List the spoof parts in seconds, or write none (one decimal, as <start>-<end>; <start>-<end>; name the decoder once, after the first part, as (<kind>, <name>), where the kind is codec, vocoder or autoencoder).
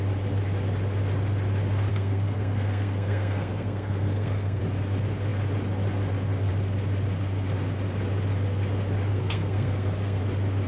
1.9-4.6 (codec, SNAC); 9.1-10.2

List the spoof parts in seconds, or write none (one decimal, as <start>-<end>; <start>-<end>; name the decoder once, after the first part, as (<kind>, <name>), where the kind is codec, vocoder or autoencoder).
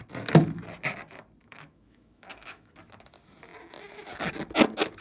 1.4-2.7 (autoencoder, DAC-VAE)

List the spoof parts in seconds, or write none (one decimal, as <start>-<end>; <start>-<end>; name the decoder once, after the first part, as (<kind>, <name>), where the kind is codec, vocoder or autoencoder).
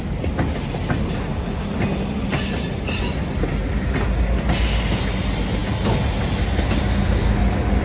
none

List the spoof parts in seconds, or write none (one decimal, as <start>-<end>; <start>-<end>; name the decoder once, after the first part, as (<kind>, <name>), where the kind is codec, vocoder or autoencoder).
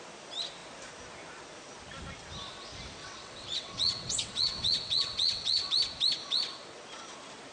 3.0-5.7 (vocoder, WaveNeXt)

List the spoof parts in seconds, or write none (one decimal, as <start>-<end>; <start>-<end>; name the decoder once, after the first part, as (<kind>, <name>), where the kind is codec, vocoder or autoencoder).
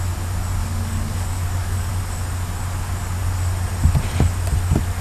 0.6-1.9 (codec, DAC)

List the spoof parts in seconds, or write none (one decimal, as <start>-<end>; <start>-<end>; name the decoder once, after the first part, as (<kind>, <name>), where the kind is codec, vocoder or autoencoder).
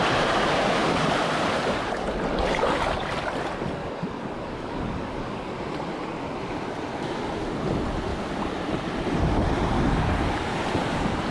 3.8-5.5 (codec, DAC)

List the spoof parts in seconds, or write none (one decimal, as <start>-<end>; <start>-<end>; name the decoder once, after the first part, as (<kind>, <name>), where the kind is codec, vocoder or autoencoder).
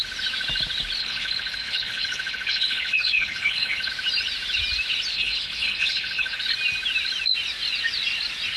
1.0-3.9 (codec, HILCodec); 5.1-6.4